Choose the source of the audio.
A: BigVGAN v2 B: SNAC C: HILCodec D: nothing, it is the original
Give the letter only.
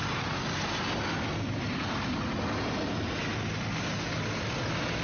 D